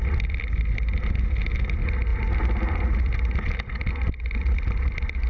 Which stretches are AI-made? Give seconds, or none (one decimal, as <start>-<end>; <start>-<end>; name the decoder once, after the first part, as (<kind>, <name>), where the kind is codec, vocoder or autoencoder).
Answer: none